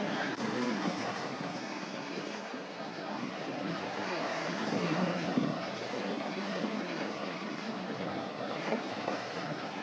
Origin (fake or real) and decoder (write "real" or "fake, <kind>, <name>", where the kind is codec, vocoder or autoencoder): fake, codec, SNAC